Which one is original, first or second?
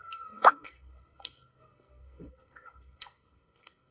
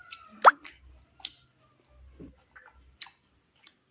second